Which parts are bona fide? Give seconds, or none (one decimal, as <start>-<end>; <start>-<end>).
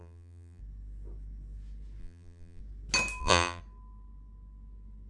0.6-2.0; 2.6-3.2; 3.6-5.1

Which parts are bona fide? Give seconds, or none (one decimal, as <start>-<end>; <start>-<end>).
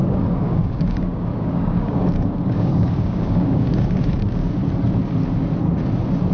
4.6-6.3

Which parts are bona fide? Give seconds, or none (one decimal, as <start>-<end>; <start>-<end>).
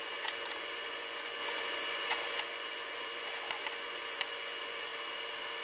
4.9-5.6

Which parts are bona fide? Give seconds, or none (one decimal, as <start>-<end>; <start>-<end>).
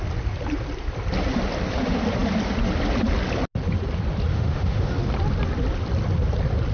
0.0-4.3; 4.9-6.7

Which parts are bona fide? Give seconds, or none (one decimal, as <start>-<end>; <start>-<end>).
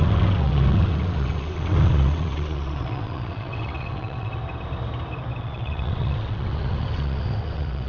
4.3-5.4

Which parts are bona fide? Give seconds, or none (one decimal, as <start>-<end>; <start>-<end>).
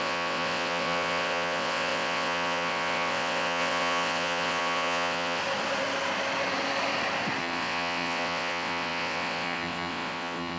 5.4-7.4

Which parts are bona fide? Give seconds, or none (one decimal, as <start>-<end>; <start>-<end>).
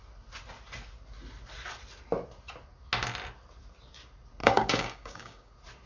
0.0-4.4; 5.5-5.9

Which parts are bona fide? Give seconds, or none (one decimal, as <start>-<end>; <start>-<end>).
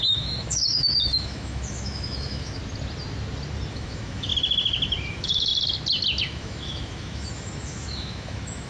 2.6-3.7; 4.3-5.1; 5.5-6.2